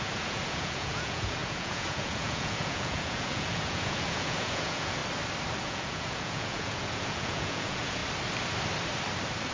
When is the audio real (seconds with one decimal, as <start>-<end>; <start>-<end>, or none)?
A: 5.0-5.6; 8.0-9.5